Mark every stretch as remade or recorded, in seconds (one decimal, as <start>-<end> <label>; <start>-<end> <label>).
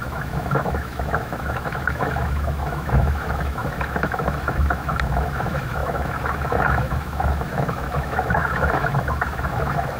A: 0.0-10.0 remade